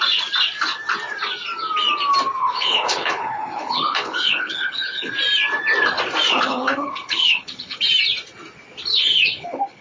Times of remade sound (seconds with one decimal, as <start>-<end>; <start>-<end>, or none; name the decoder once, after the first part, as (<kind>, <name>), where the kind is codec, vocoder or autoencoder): 2.4-5.1 (codec, HILCodec); 6.3-7.8; 8.9-9.8